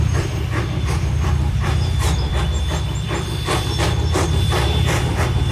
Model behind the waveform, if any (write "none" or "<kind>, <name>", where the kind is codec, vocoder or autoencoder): vocoder, BigVGAN v2